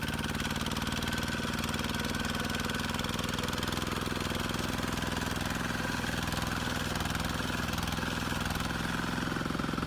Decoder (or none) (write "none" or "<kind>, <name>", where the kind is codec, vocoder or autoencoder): none